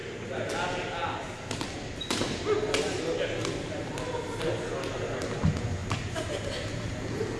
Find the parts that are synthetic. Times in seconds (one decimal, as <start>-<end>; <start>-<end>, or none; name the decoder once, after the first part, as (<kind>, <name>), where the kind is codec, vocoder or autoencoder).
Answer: 5.8-7.0 (vocoder, BigVGAN v2)